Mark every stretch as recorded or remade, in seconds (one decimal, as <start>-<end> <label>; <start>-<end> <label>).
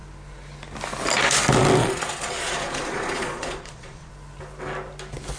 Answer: 0.0-1.8 recorded; 1.8-4.1 remade; 4.1-5.4 recorded